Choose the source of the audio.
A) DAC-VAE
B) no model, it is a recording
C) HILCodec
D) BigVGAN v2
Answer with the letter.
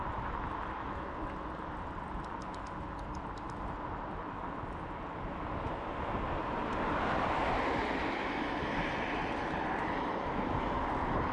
B